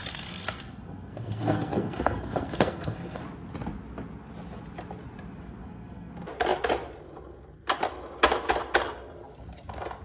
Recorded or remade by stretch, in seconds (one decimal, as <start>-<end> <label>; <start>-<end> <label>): 0.0-3.2 remade; 3.2-5.6 recorded; 5.6-6.1 remade; 6.1-10.0 recorded